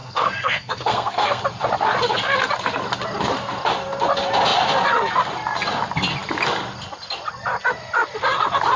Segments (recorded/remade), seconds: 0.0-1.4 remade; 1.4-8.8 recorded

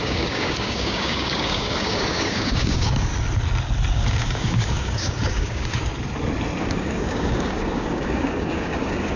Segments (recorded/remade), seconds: 0.0-3.1 remade; 3.1-3.9 recorded; 3.9-5.8 remade; 5.8-6.6 recorded; 6.6-9.2 remade

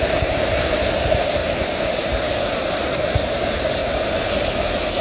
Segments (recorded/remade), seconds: 0.0-5.0 remade

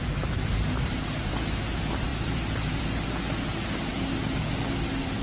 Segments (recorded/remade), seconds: 0.0-2.1 recorded; 2.1-2.8 remade; 2.8-5.2 recorded

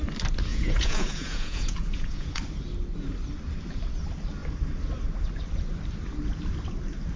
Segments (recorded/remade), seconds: 0.0-0.5 recorded; 0.5-2.4 remade; 2.4-7.2 recorded

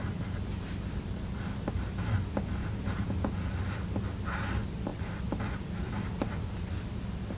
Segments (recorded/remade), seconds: 0.0-2.6 recorded; 2.6-3.5 remade; 3.5-7.4 recorded